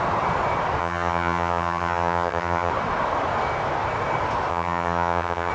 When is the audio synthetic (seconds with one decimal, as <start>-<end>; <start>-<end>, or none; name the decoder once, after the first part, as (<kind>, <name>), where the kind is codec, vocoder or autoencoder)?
0.8-2.7 (vocoder, HiFi-GAN); 4.5-5.5